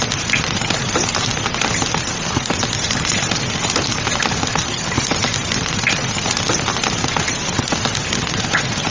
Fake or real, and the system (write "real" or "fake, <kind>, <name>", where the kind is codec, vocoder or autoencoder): real